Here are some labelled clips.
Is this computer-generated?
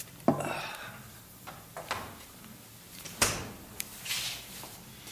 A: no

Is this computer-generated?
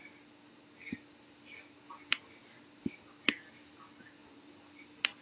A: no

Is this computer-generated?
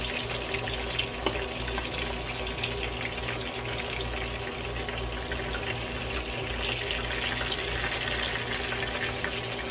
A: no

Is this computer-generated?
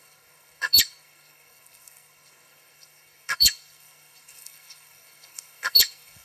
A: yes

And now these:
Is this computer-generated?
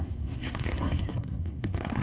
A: yes